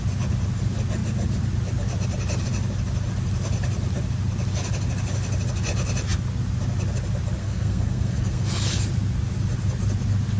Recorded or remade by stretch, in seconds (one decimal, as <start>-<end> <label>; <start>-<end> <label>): 0.0-7.4 recorded; 7.4-8.5 remade; 8.5-10.4 recorded